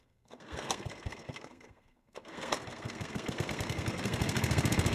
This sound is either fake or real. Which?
fake